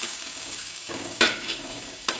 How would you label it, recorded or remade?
remade